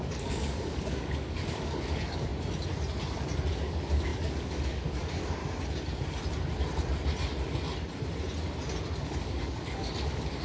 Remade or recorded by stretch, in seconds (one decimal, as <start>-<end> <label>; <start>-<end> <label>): 0.0-2.3 remade; 2.3-3.5 recorded; 3.5-5.4 remade; 5.4-9.0 recorded; 9.0-10.4 remade